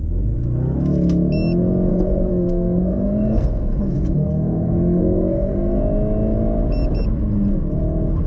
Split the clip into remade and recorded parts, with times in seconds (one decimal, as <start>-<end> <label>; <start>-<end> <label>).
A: 0.0-1.9 recorded; 1.9-5.8 remade; 5.8-8.3 recorded

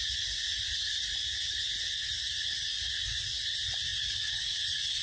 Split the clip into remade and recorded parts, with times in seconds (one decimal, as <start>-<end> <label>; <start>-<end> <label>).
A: 0.0-5.0 recorded

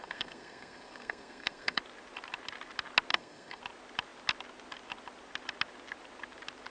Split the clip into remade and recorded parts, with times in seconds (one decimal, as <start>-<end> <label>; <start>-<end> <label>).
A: 0.0-1.8 remade; 1.8-3.1 recorded; 3.1-3.6 remade; 3.6-6.7 recorded

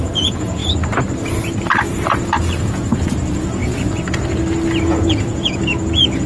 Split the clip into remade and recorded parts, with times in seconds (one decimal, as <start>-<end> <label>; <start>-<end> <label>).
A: 0.0-0.6 remade; 0.6-2.4 recorded; 2.4-3.6 remade; 3.6-4.8 recorded; 4.8-6.3 remade

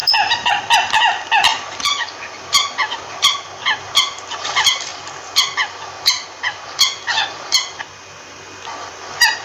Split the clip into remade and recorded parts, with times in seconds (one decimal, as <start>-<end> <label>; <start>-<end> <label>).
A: 0.0-0.5 remade; 0.5-1.5 recorded; 1.5-2.2 remade; 2.2-9.4 recorded

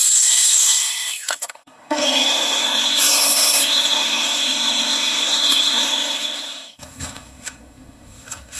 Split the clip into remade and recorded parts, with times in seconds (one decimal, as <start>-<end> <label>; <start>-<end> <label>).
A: 0.0-8.6 remade